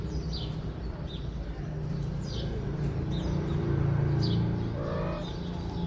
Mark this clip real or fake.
real